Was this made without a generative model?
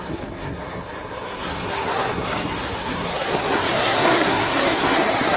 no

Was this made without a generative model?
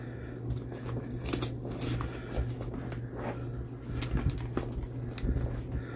yes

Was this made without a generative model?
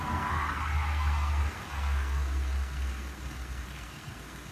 no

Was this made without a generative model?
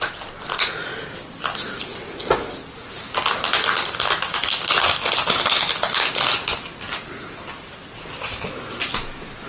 yes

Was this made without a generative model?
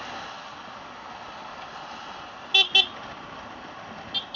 yes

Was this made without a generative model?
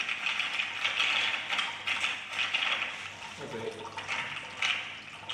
yes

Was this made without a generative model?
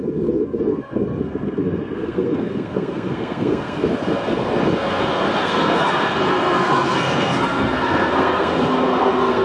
no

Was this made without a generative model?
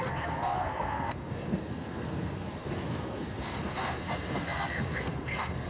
no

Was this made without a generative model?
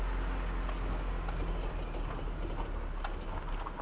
yes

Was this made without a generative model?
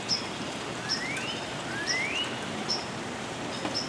yes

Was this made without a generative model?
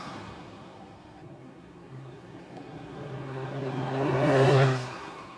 no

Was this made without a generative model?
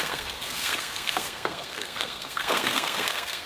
no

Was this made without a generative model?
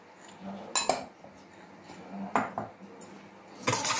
yes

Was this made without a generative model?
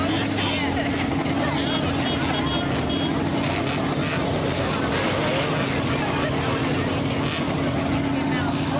yes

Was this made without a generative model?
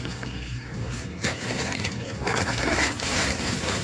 no